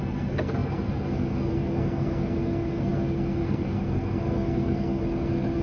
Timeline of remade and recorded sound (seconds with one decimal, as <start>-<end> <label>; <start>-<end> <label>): 0.0-5.6 remade